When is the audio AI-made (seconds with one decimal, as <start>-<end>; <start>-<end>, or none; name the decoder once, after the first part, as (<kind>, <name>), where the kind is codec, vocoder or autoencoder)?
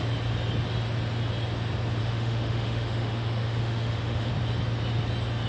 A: 2.0-4.3 (autoencoder, DAC-VAE)